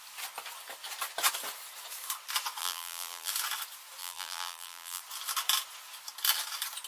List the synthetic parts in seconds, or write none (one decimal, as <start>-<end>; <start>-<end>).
2.6-3.3; 4.0-5.0

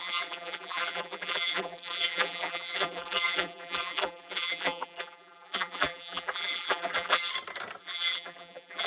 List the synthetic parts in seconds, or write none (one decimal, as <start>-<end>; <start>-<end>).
0.0-7.3; 7.8-8.9